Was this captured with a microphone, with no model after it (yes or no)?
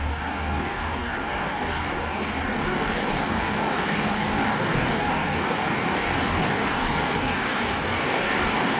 no